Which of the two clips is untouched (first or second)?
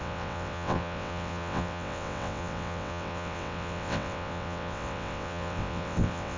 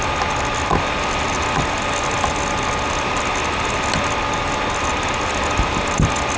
second